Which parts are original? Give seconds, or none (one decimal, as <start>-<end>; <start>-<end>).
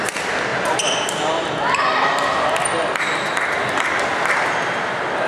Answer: 0.0-5.3